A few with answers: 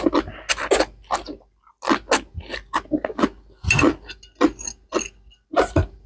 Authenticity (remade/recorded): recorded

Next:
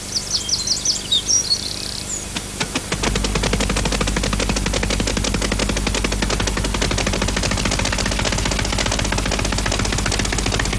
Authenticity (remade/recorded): recorded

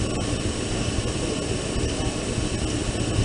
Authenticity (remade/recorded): recorded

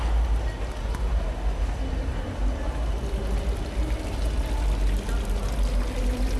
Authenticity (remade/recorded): recorded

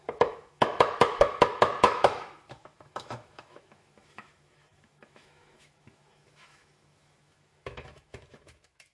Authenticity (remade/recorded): remade